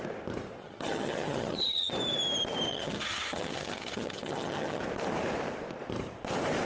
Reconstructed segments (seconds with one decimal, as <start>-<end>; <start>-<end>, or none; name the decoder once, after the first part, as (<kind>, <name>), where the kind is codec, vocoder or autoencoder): 0.6-1.9 (vocoder, HiFi-GAN); 2.7-4.8